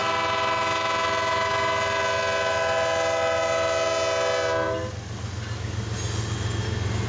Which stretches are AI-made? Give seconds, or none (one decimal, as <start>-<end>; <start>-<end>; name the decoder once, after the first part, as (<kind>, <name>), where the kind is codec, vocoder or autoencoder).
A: none